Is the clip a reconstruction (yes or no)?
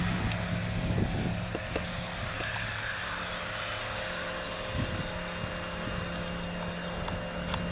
no